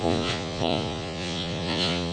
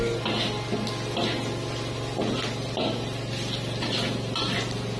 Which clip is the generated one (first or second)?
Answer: first